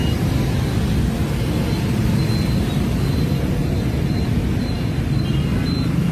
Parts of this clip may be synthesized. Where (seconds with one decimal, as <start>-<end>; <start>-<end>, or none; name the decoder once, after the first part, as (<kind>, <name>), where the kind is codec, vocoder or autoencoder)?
none